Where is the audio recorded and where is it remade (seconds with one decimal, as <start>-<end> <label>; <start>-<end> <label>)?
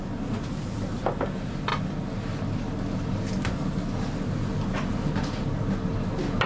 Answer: 0.0-6.5 recorded